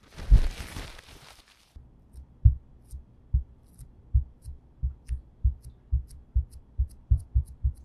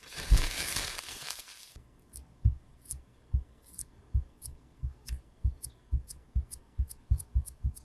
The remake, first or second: second